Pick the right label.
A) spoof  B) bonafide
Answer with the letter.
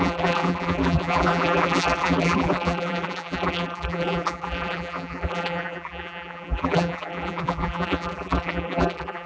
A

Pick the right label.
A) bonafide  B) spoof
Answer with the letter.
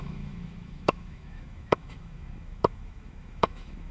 B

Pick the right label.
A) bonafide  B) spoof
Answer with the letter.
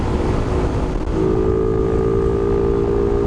A